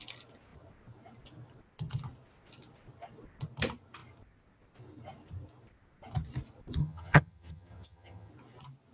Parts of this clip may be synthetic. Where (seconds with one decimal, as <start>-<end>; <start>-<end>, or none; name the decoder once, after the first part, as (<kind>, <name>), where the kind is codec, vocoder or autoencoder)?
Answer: 6.8-8.3 (vocoder, HiFi-GAN)